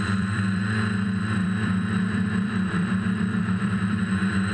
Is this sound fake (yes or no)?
yes